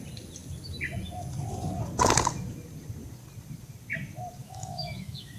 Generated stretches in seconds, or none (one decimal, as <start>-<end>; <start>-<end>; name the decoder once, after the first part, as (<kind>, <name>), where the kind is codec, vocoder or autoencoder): 4.4-5.4 (autoencoder, DAC-VAE)